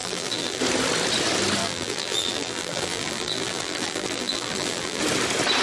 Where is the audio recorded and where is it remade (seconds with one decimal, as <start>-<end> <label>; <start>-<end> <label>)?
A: 0.0-0.6 remade; 0.6-1.6 recorded; 1.6-5.0 remade; 5.0-5.6 recorded